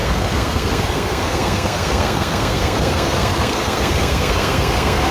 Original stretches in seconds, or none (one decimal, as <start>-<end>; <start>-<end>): none